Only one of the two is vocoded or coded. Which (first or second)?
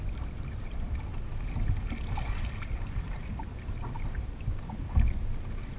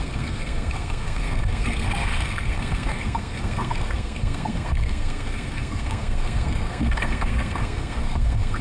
second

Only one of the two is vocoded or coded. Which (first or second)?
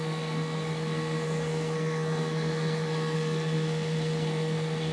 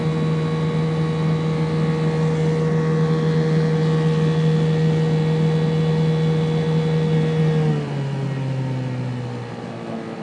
first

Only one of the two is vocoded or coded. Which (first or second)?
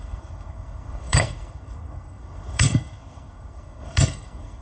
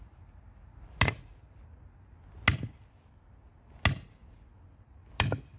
first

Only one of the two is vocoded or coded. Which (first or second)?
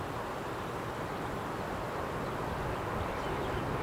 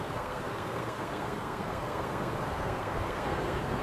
second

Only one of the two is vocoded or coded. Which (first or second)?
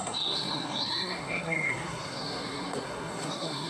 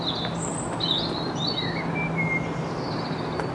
first